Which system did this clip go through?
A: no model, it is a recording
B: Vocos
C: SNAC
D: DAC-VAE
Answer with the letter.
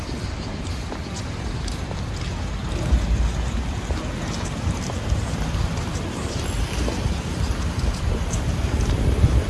A